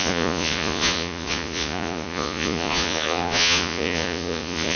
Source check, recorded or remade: remade